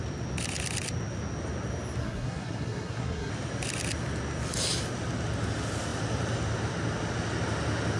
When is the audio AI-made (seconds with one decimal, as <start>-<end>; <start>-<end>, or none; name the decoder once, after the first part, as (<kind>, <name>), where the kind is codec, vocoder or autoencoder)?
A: 2.0-3.3 (codec, SNAC)